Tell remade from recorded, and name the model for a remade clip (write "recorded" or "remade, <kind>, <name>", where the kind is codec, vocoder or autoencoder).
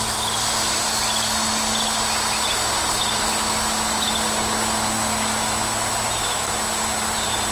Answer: recorded